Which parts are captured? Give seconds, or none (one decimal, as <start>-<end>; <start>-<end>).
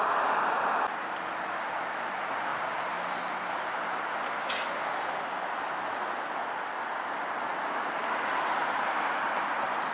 0.0-9.9